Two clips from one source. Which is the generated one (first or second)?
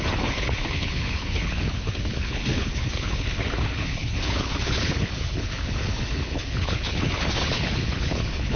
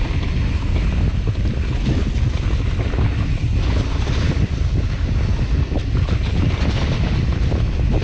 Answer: first